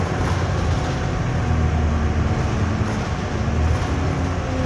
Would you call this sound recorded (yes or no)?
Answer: yes